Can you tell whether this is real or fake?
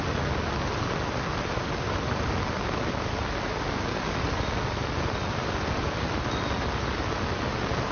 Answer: real